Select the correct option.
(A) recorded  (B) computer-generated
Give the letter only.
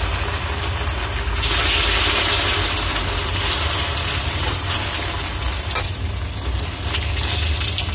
A